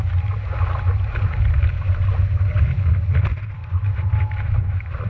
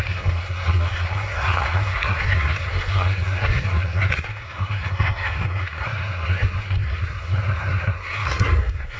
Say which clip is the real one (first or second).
first